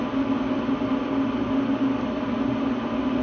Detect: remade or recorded recorded